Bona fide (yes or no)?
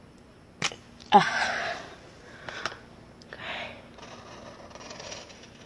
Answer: yes